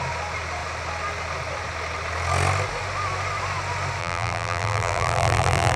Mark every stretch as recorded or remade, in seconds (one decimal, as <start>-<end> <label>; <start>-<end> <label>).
0.0-4.0 recorded; 4.0-5.8 remade

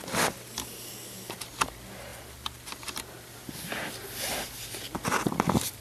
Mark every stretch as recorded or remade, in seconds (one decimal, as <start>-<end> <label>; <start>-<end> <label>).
0.0-5.8 recorded

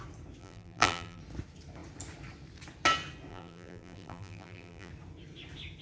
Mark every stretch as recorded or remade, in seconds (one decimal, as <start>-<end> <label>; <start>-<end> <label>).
0.0-0.4 recorded; 0.4-1.2 remade; 1.2-3.3 recorded; 3.3-4.9 remade; 4.9-5.8 recorded

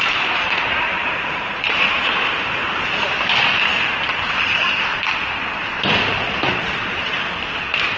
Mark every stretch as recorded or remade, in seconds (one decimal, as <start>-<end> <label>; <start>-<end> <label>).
0.0-3.5 remade; 3.5-6.6 recorded; 6.6-8.0 remade

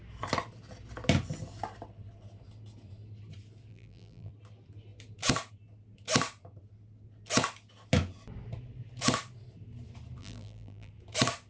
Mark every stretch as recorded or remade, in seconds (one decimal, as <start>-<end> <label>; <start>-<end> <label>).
0.0-3.7 recorded; 3.7-4.3 remade; 4.3-10.2 recorded; 10.2-10.9 remade; 10.9-11.5 recorded

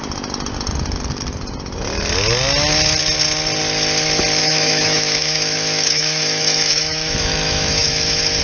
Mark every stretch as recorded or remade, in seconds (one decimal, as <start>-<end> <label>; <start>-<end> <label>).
0.0-4.4 recorded; 4.4-8.4 remade